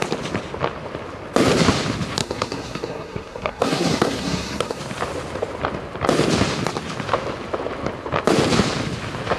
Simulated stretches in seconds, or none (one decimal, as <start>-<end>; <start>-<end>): 2.2-4.8